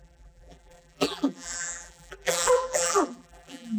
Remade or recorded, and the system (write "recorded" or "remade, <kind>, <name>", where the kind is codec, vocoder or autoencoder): remade, vocoder, BigVGAN v2